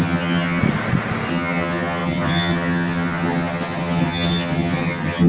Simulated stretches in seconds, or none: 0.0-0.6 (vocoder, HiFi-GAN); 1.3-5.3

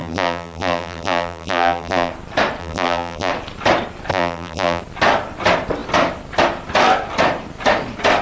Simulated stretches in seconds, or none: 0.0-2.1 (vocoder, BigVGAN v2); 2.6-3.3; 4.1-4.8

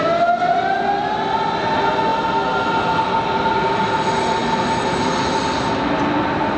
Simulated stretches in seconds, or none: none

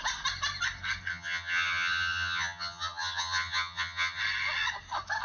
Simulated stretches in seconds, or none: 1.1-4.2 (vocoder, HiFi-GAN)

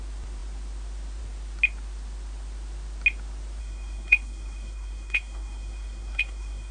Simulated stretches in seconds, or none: 3.6-6.7 (codec, SNAC)

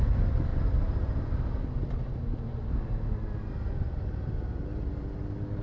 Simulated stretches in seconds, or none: none

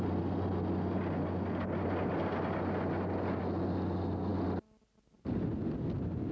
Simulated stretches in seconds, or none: none

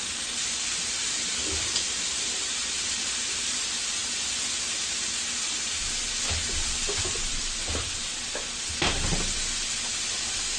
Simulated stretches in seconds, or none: none